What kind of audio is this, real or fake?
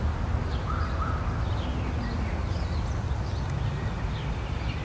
real